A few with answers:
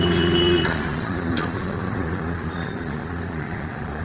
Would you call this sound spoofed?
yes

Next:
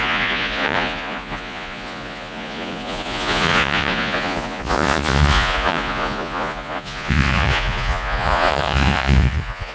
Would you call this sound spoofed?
yes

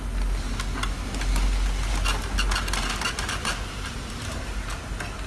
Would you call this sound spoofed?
no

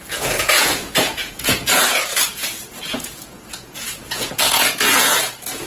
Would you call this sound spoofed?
yes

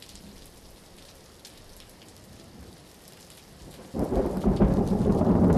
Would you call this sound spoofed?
no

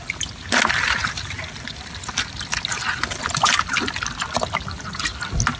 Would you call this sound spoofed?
no